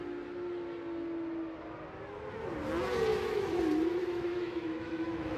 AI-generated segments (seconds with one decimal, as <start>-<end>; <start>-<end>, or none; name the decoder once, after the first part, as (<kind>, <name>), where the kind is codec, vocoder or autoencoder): 3.1-3.6 (autoencoder, DAC-VAE); 4.0-5.4